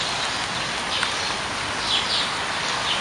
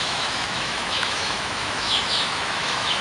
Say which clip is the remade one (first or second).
second